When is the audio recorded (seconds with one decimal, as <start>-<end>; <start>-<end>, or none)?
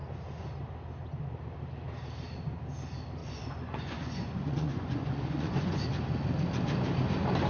0.0-3.2; 5.8-7.5